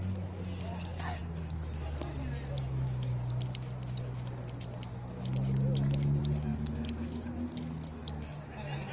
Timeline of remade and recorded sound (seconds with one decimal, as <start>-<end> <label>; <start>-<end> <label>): 0.0-8.9 recorded